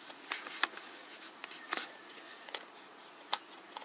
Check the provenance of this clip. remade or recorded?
remade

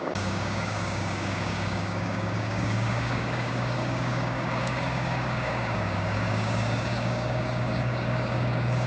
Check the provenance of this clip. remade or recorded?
remade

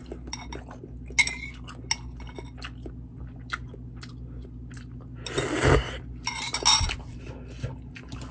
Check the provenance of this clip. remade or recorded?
recorded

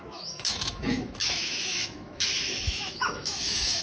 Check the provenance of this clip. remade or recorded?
remade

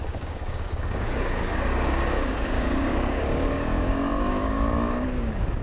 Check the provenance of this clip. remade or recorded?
remade